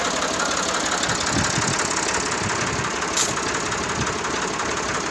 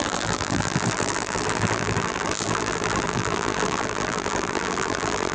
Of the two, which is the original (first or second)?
first